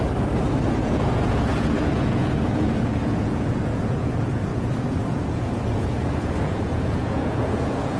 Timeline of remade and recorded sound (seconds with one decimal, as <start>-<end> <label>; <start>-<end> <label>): 0.0-0.8 recorded; 0.8-8.0 remade

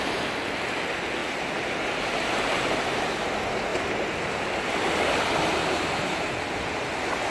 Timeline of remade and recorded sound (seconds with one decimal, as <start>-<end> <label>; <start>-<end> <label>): 0.0-3.7 recorded; 3.7-4.4 remade; 4.4-5.6 recorded; 5.6-6.4 remade; 6.4-7.3 recorded

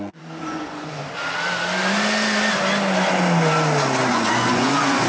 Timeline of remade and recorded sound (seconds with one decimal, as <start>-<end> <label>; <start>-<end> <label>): 0.0-1.0 remade; 1.0-4.1 recorded; 4.1-5.1 remade